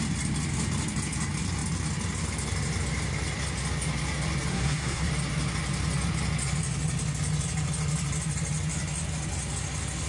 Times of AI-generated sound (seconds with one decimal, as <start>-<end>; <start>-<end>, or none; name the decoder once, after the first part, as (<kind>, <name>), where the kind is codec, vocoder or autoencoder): 4.5-5.1 (codec, SNAC)